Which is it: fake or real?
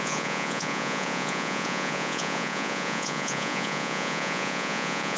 fake